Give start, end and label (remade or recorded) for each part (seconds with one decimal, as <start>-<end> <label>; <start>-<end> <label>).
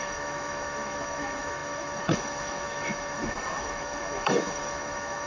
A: 0.0-5.3 remade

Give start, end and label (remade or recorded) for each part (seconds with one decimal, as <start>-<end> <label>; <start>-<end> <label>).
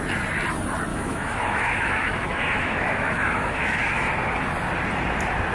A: 0.0-0.9 recorded; 0.9-4.1 remade; 4.1-5.5 recorded